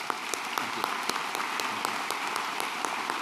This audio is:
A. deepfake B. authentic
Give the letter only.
B